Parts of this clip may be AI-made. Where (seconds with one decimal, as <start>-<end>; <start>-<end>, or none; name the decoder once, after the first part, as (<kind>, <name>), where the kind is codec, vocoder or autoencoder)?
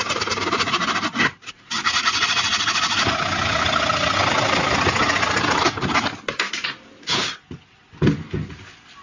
1.3-1.9 (vocoder, BigVGAN v2)